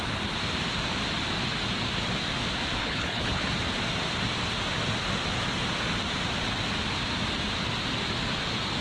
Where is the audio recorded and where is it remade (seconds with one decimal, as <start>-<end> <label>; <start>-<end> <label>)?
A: 0.0-2.8 recorded; 2.8-3.4 remade; 3.4-8.8 recorded